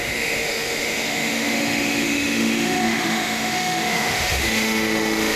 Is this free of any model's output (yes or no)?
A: no